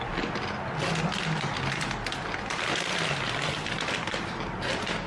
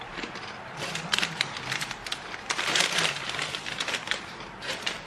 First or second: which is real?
first